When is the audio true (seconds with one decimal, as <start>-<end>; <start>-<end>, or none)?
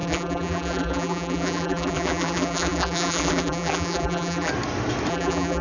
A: 4.5-5.1